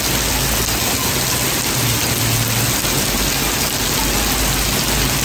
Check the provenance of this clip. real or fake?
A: real